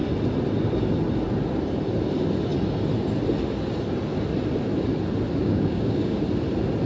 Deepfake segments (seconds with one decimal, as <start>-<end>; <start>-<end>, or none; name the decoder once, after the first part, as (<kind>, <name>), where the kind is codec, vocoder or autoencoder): 5.4-6.2 (codec, DAC)